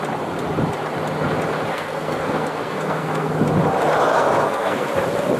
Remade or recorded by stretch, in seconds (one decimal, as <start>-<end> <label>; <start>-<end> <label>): 0.0-1.7 recorded; 1.7-3.3 remade; 3.3-4.1 recorded; 4.1-4.9 remade; 4.9-5.4 recorded

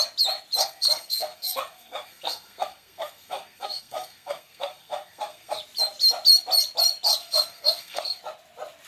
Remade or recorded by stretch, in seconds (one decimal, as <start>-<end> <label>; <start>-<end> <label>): 0.0-0.6 recorded; 0.6-5.6 remade; 5.6-7.1 recorded; 7.1-8.2 remade; 8.2-8.9 recorded

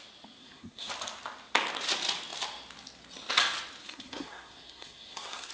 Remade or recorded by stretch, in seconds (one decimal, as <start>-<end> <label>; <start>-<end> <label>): 0.0-0.4 recorded; 0.4-0.9 remade; 0.9-3.8 recorded; 3.8-5.5 remade